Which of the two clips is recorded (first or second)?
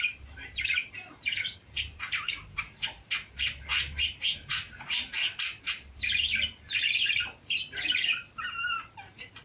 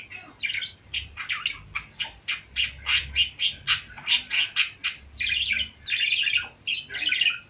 second